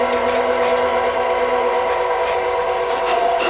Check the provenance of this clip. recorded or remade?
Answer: remade